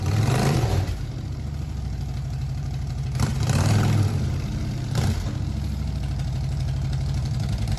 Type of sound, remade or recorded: remade